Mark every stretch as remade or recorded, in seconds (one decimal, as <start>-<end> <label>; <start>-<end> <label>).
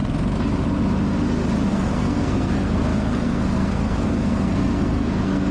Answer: 0.0-1.7 recorded; 1.7-5.5 remade